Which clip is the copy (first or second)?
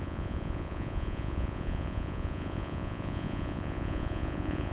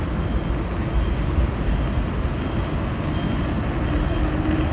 first